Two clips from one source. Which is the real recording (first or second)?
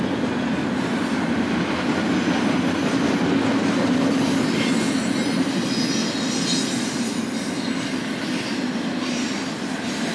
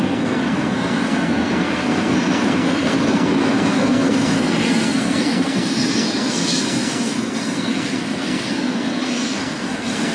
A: first